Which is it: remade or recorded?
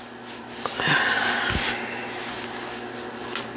recorded